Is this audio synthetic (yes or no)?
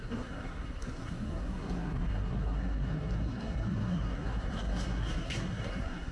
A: yes